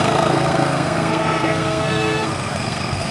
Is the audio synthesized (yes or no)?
yes